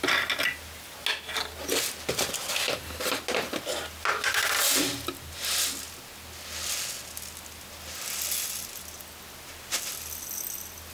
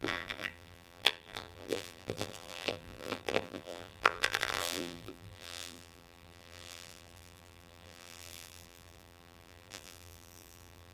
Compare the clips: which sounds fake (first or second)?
second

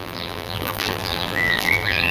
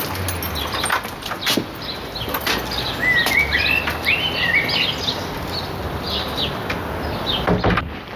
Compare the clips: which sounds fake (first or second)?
first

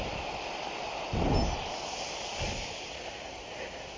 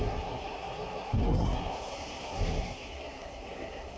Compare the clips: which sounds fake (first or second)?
second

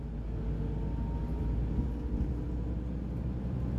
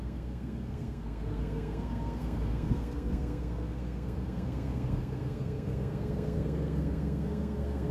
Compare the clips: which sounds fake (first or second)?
second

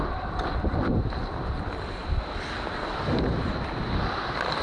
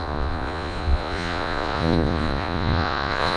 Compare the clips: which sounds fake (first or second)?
second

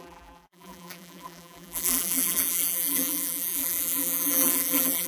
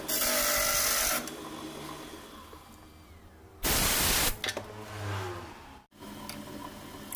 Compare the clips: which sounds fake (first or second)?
first